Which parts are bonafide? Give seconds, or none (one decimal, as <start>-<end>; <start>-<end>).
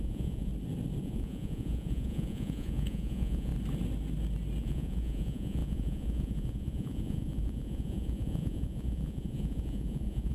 0.5-1.0; 3.5-4.6